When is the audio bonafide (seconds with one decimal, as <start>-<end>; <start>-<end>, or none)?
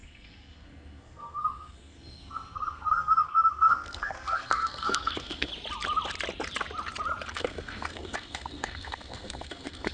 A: 5.5-7.3